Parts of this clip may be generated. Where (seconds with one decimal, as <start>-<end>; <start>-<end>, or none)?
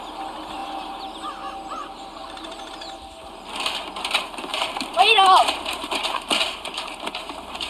0.6-1.2; 1.8-2.7; 4.5-7.7